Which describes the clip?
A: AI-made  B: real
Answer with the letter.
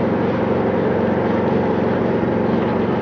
B